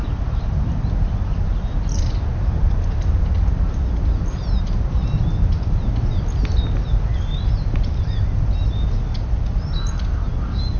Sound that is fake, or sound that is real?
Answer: real